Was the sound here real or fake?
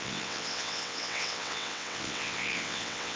fake